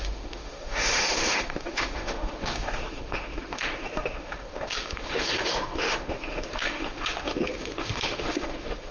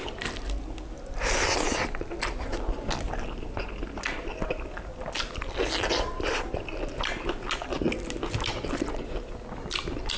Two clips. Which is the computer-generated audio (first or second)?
first